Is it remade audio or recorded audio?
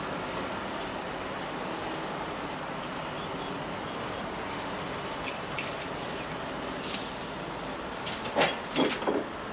recorded